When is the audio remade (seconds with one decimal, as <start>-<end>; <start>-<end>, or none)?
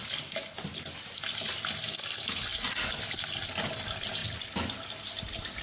2.5-3.7; 4.2-5.6